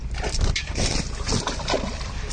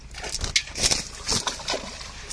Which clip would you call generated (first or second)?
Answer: first